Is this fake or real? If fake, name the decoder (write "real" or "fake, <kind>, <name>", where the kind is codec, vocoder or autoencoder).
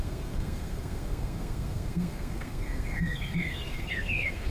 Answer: fake, codec, SNAC